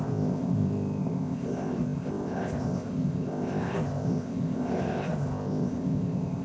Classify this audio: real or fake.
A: fake